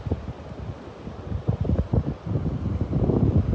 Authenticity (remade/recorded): recorded